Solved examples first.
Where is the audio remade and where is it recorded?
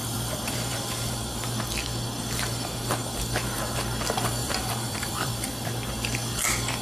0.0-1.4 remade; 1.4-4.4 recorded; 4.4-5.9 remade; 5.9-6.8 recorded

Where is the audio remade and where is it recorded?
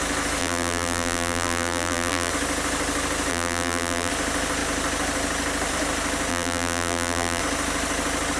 0.0-0.4 recorded; 0.4-2.3 remade; 2.3-3.3 recorded; 3.3-4.1 remade; 4.1-6.3 recorded; 6.3-7.4 remade; 7.4-8.4 recorded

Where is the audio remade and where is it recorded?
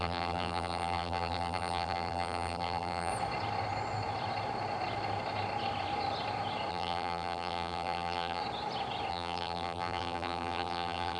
0.0-3.1 remade; 3.1-6.7 recorded; 6.7-8.4 remade; 8.4-9.1 recorded; 9.1-11.2 remade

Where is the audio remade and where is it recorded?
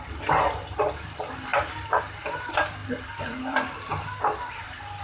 0.0-1.5 remade; 1.5-2.0 recorded; 2.0-5.0 remade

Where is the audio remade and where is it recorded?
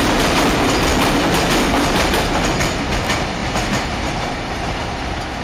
0.0-3.4 recorded; 3.4-5.0 remade; 5.0-5.4 recorded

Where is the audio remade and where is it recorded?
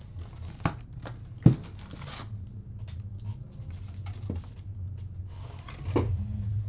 0.0-3.1 recorded; 3.1-4.5 remade; 4.5-5.2 recorded; 5.2-6.1 remade; 6.1-6.7 recorded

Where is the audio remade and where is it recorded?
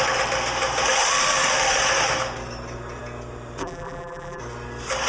0.0-3.6 recorded; 3.6-4.4 remade; 4.4-5.1 recorded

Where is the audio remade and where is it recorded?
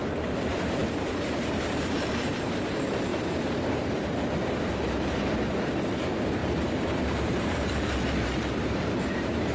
0.0-0.8 remade; 0.8-1.3 recorded; 1.3-9.5 remade